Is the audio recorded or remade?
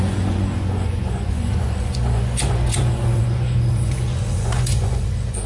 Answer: remade